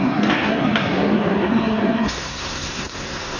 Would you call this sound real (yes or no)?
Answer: no